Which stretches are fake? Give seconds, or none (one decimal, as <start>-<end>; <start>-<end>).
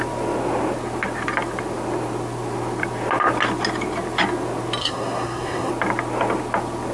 4.8-5.7